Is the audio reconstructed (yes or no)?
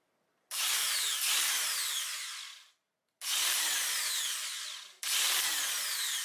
no